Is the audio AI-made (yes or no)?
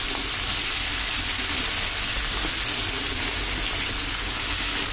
no